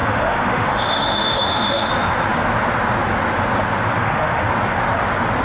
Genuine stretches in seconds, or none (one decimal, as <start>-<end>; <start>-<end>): 1.9-4.0; 4.5-5.4